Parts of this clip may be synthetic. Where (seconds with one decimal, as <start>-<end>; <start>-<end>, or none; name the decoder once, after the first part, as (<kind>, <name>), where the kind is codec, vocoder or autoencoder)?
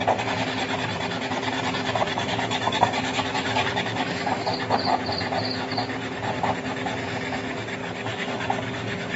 2.1-4.6 (codec, DAC); 7.8-9.2